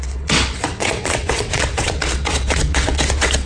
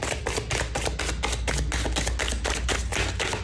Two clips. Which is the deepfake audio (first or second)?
first